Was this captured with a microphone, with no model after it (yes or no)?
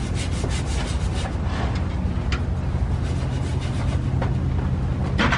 yes